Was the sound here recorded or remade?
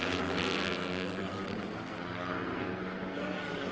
remade